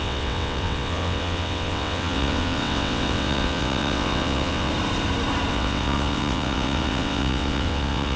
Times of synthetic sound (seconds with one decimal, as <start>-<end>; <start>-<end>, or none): 0.0-4.7; 5.5-8.2